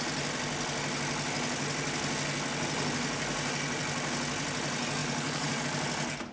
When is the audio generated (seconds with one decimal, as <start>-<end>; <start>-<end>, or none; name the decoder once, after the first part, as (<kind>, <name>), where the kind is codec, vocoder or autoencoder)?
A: 5.0-5.6 (vocoder, BigVGAN v2)